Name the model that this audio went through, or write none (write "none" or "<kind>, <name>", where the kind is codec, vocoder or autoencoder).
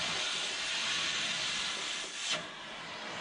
none